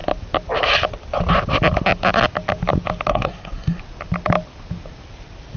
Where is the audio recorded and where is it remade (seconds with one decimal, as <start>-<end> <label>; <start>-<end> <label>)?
0.0-3.1 recorded; 3.1-3.8 remade; 3.8-5.6 recorded